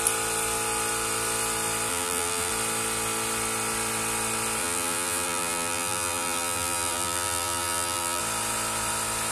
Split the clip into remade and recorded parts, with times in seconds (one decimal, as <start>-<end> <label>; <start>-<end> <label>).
0.0-1.9 recorded; 1.9-2.5 remade; 2.5-4.6 recorded; 4.6-8.2 remade; 8.2-9.3 recorded